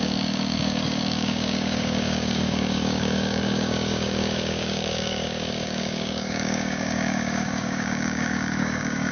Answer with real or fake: fake